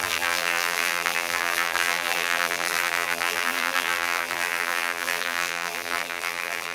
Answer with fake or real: fake